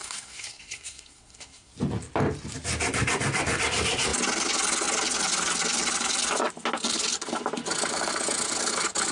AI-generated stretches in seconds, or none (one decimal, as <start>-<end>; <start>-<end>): 0.0-1.7